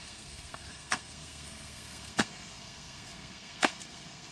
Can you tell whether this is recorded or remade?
remade